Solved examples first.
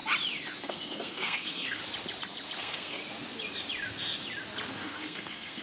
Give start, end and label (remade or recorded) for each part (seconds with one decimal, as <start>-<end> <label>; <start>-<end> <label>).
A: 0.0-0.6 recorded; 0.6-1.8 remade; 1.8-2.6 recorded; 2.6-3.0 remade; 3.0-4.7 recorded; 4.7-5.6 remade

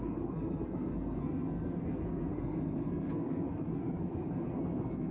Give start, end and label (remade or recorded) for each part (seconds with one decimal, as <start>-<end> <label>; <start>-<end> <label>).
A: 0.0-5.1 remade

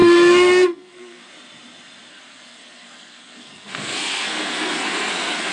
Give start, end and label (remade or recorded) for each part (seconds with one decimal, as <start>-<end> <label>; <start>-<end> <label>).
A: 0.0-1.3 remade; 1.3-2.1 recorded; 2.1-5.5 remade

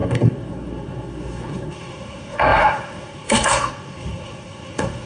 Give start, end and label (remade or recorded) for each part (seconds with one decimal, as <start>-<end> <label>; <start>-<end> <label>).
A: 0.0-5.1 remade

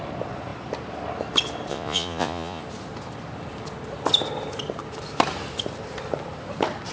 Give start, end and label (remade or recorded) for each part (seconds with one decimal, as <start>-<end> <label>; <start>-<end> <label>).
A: 0.0-1.7 recorded; 1.7-2.6 remade; 2.6-6.9 recorded

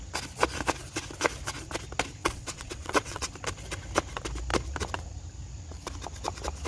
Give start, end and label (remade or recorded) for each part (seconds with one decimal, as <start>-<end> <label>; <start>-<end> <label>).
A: 0.0-2.2 recorded; 2.2-3.3 remade; 3.3-6.7 recorded

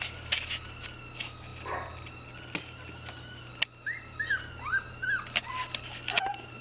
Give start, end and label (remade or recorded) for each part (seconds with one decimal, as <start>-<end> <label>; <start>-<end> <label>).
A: 0.0-6.6 recorded